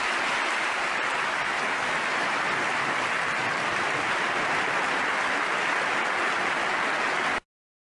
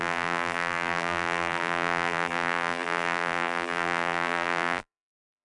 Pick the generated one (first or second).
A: second